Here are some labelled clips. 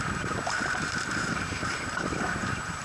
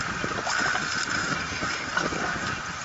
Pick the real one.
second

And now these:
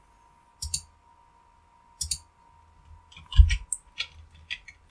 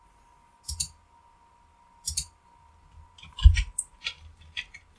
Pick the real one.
first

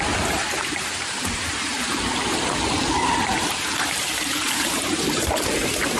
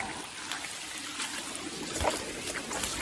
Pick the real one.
second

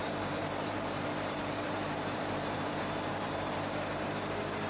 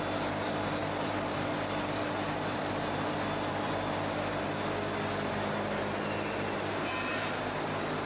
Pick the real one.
second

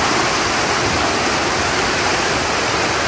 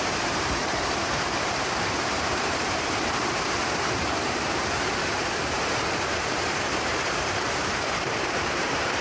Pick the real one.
first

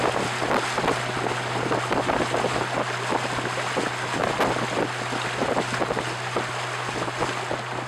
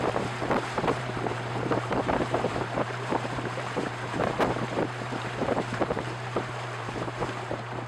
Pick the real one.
first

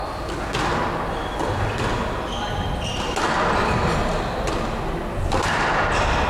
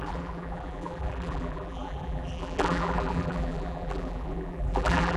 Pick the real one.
first